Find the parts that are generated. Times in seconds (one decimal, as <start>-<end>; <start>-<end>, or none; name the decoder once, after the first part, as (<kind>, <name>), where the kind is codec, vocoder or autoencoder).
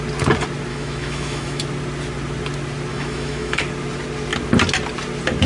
0.7-1.6 (autoencoder, DAC-VAE); 2.9-3.6